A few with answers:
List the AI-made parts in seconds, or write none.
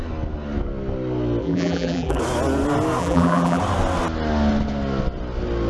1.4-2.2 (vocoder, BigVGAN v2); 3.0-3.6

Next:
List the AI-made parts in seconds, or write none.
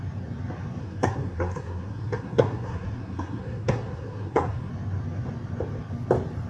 0.8-4.7 (codec, SNAC)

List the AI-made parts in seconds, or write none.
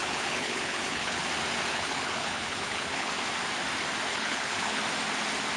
0.0-1.2 (codec, HILCodec); 1.7-3.1; 4.1-4.8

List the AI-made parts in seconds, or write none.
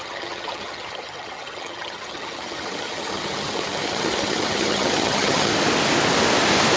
0.0-5.5 (vocoder, HiFi-GAN)